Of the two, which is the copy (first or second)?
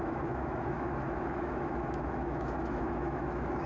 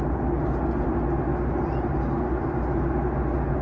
first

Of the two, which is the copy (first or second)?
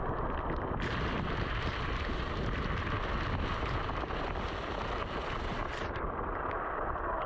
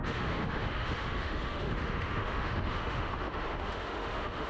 second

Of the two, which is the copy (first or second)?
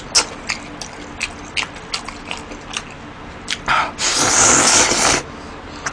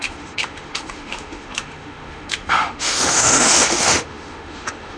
second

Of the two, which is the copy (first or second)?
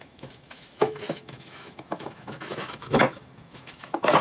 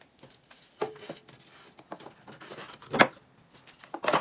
first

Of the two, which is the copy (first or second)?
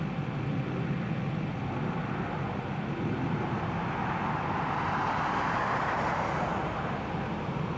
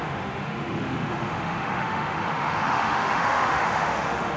second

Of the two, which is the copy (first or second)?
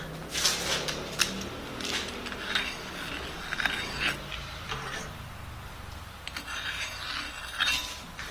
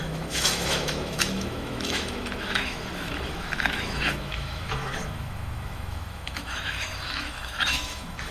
second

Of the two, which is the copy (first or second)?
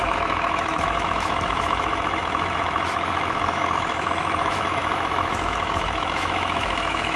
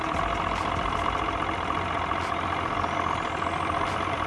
first